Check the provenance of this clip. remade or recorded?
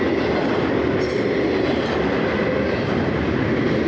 recorded